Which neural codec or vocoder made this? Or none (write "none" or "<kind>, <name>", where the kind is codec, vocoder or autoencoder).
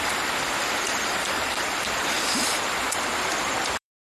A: vocoder, BigVGAN v2